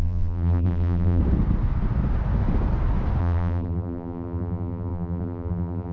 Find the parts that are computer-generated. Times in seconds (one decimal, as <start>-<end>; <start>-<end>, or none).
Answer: 0.0-1.2; 3.2-5.9